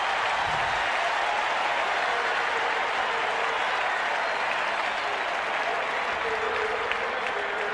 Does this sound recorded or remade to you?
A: recorded